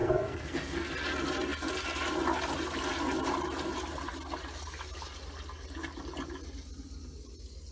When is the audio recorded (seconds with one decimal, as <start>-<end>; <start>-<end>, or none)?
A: 0.9-7.7